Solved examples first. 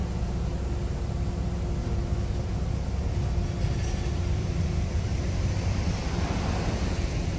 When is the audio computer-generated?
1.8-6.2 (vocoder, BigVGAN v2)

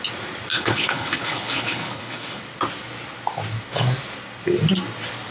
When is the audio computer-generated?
0.5-2.4 (codec, HILCodec)

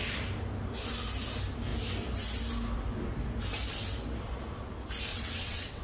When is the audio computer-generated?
5.1-5.8 (vocoder, WaveNeXt)

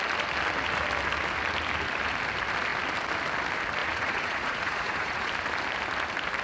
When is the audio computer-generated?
3.8-5.3 (vocoder, Vocos)

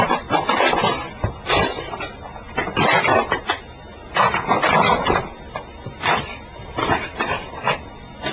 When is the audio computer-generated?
6.5-7.8 (vocoder, BigVGAN v2)